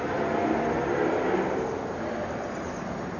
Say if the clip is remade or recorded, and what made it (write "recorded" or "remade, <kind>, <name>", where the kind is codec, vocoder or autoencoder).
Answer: recorded